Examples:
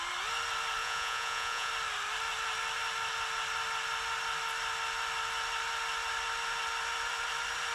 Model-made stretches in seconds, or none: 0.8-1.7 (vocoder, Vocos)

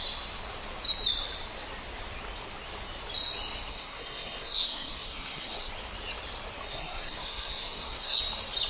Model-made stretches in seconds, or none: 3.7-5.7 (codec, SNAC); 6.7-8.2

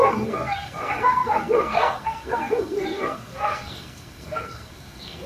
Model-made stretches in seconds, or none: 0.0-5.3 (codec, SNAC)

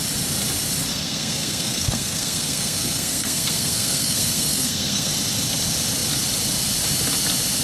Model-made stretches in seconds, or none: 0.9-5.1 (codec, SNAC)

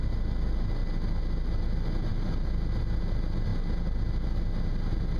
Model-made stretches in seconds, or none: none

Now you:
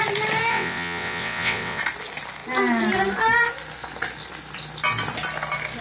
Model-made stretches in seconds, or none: 0.5-1.8 (vocoder, WaveNeXt)